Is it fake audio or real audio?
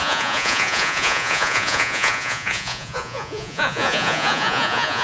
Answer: fake